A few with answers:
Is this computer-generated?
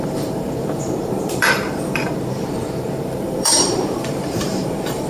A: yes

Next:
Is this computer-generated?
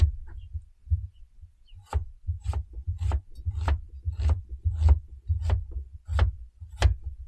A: no